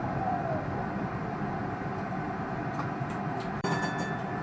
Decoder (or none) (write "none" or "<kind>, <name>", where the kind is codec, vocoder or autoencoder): vocoder, BigVGAN v2